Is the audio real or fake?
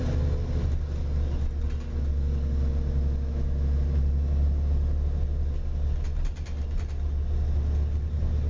real